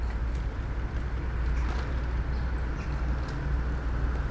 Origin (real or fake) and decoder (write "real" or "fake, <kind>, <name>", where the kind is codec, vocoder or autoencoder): real